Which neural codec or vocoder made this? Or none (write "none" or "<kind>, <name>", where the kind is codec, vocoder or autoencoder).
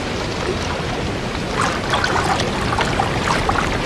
none